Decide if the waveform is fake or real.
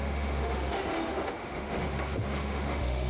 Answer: fake